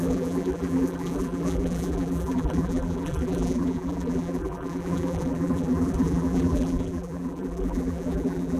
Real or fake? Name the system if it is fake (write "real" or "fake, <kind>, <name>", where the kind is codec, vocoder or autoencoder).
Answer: fake, vocoder, BigVGAN v2